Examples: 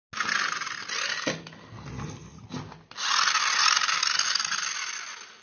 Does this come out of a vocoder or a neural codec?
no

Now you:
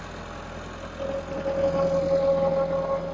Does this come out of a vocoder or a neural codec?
no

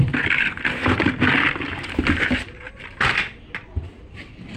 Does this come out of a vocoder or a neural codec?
no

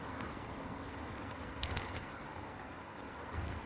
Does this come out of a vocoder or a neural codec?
yes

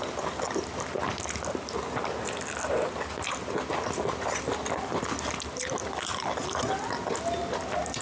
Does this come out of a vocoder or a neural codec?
no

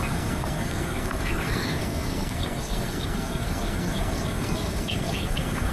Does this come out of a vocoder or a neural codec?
yes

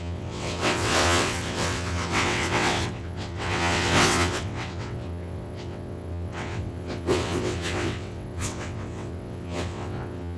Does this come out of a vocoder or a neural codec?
yes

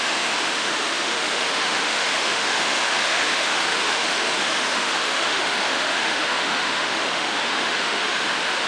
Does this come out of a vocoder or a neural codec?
yes